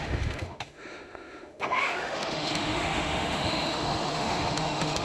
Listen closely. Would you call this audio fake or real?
fake